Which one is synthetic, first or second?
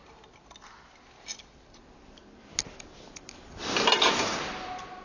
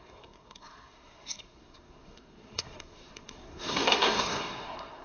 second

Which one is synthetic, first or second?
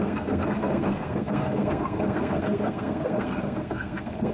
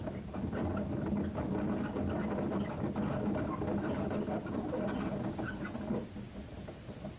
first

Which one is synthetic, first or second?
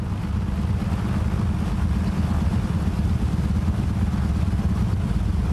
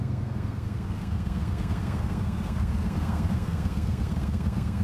second